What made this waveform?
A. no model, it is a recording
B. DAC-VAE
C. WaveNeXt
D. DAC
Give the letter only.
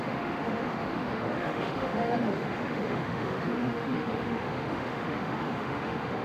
B